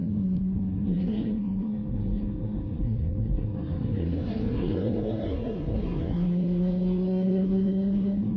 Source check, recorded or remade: remade